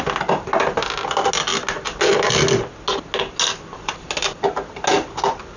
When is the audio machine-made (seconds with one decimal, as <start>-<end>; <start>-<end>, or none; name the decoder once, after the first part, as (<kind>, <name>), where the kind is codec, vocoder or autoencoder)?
none